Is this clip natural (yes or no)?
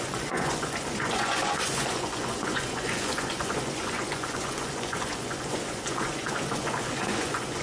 no